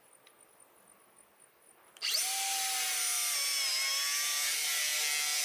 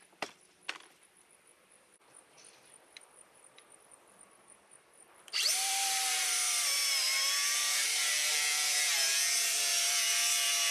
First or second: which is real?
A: first